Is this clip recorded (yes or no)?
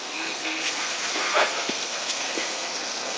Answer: no